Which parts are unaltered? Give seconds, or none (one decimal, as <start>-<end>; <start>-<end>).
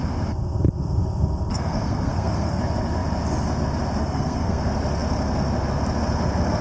0.0-1.5; 2.6-4.0; 4.6-6.6